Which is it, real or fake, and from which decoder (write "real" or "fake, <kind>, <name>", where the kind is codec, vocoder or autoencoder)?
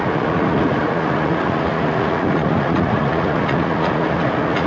fake, vocoder, Vocos